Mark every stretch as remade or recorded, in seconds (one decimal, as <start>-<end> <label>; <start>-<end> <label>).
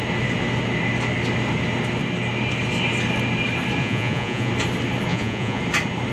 0.0-3.8 recorded; 3.8-4.5 remade; 4.5-5.1 recorded; 5.1-5.6 remade; 5.6-6.1 recorded